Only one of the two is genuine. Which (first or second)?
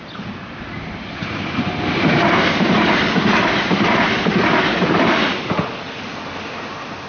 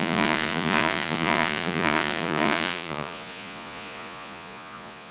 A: first